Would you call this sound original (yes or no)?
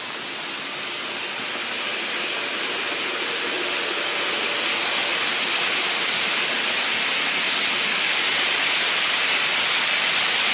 yes